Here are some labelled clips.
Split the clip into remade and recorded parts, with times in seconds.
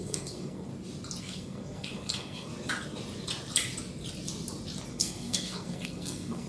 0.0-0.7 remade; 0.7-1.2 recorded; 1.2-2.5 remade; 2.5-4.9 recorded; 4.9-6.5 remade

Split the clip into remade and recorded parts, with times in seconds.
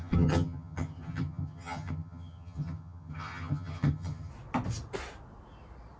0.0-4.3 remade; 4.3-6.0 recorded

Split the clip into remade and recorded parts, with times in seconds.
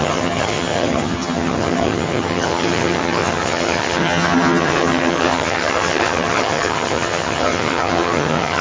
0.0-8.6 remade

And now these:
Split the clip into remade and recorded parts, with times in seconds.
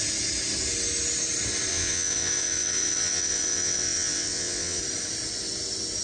0.0-1.7 recorded; 1.7-4.8 remade; 4.8-6.0 recorded